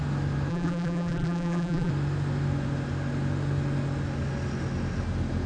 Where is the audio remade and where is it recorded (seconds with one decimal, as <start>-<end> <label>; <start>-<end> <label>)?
0.0-0.5 recorded; 0.5-1.9 remade; 1.9-5.5 recorded